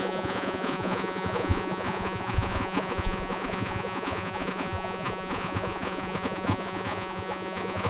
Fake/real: fake